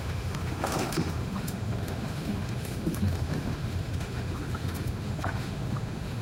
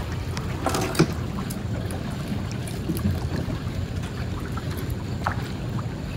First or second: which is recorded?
second